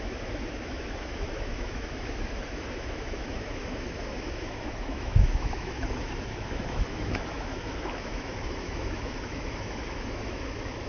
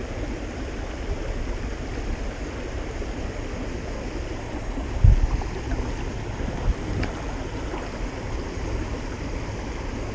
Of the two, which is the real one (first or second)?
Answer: second